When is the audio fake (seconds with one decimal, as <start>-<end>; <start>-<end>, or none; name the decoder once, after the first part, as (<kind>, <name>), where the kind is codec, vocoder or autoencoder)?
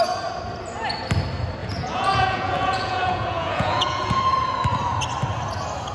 1.6-4.2 (vocoder, Vocos)